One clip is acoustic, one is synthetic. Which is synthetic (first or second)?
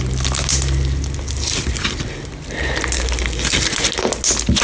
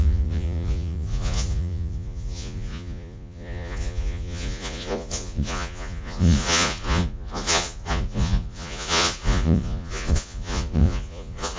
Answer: second